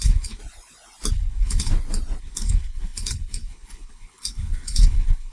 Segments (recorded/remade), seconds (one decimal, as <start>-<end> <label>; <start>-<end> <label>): 0.0-0.4 remade; 0.4-1.1 recorded; 1.1-1.7 remade; 1.7-2.2 recorded; 2.2-5.3 remade